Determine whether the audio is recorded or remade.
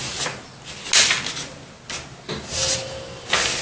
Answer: recorded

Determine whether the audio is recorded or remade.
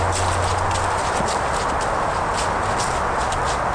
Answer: recorded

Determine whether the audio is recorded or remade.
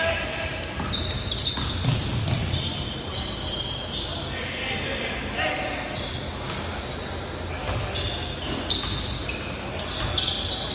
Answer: recorded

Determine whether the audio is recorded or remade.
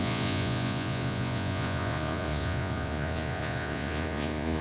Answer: remade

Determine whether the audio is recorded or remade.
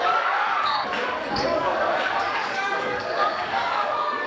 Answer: remade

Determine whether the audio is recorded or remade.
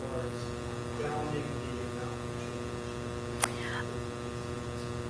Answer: recorded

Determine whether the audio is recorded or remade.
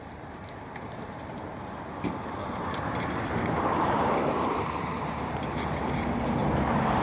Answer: remade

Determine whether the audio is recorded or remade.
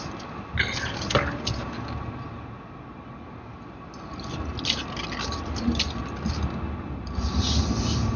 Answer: recorded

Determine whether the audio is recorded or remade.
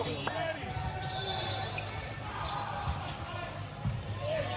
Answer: remade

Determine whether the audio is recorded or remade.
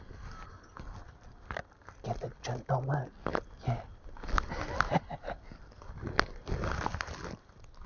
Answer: recorded